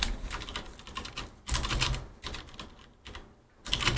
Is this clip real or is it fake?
real